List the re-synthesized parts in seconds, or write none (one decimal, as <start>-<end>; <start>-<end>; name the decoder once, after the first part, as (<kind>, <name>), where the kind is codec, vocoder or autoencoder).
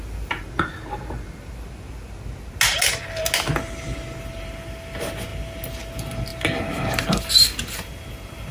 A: none